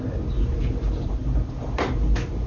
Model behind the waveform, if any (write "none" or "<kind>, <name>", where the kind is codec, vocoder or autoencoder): none